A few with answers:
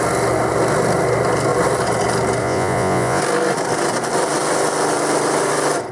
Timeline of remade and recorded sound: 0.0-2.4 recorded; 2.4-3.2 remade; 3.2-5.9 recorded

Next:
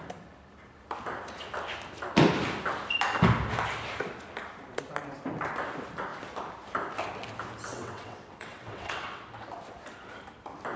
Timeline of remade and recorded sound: 0.0-7.7 recorded; 7.7-9.2 remade; 9.2-10.8 recorded

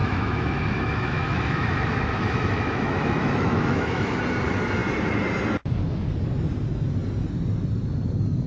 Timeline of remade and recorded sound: 0.0-4.2 remade; 4.2-8.5 recorded

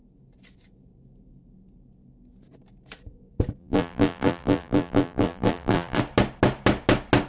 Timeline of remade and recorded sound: 0.0-3.6 recorded; 3.6-6.0 remade; 6.0-7.3 recorded

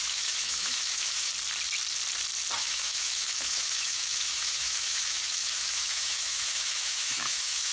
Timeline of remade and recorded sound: 0.0-1.3 remade; 1.3-2.6 recorded; 2.6-7.7 remade

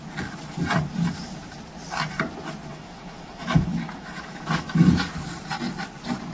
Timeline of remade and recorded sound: 0.0-2.7 recorded; 2.7-4.9 remade; 4.9-6.3 recorded

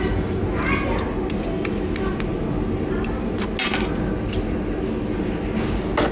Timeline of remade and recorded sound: 0.0-6.1 recorded

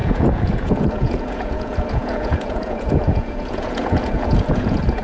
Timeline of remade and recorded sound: 0.0-5.0 remade